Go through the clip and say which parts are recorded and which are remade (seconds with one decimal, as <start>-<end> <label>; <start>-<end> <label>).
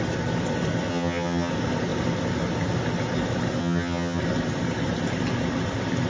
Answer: 0.0-0.9 recorded; 0.9-1.5 remade; 1.5-3.6 recorded; 3.6-4.2 remade; 4.2-6.1 recorded